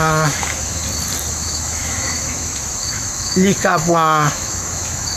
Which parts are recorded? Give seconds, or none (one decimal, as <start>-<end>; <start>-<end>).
0.8-1.3

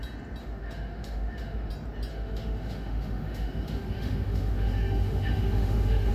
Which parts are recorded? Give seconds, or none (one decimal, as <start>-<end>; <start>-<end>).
0.0-0.4; 1.7-2.1